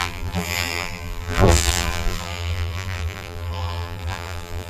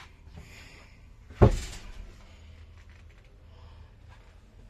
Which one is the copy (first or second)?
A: first